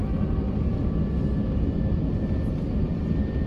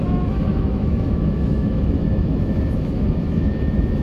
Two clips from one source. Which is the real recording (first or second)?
first